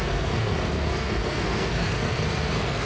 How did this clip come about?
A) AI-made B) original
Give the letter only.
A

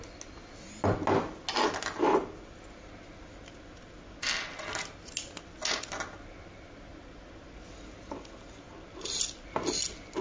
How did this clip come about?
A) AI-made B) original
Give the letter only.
B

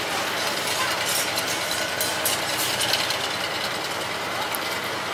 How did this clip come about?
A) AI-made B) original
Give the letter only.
A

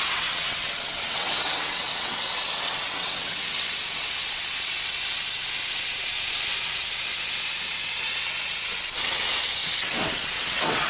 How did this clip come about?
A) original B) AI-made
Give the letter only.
B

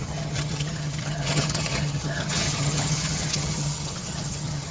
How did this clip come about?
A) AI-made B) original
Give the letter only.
A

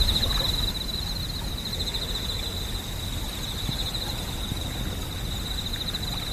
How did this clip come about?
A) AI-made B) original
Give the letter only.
B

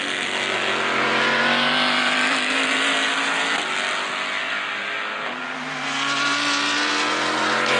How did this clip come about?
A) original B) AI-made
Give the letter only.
A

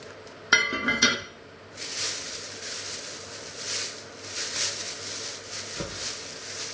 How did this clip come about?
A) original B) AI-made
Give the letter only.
A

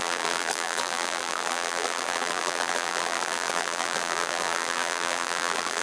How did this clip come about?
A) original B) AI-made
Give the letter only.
B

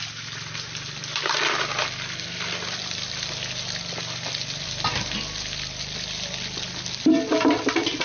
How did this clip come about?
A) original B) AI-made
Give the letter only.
A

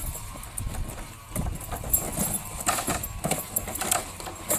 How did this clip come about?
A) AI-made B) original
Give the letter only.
B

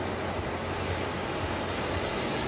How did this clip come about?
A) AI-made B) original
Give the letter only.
B